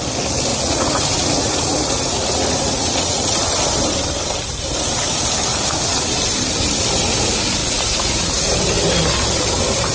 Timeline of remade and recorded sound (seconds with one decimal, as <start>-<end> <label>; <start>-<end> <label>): 0.0-0.5 recorded; 0.5-3.5 remade; 3.5-5.5 recorded; 5.5-6.1 remade; 6.1-7.6 recorded; 7.6-8.3 remade; 8.3-9.9 recorded